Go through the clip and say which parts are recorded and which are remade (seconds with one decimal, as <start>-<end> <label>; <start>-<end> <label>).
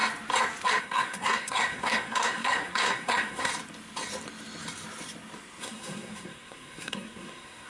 0.0-0.8 recorded; 0.8-3.5 remade; 3.5-5.6 recorded; 5.6-7.7 remade